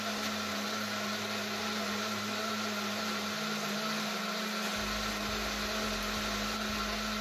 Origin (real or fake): real